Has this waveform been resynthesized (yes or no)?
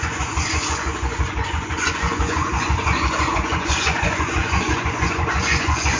yes